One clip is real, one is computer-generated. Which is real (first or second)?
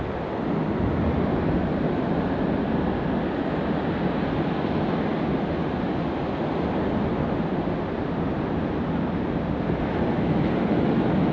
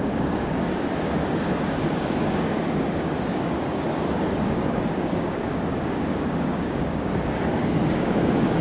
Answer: first